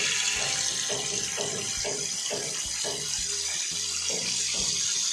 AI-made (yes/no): no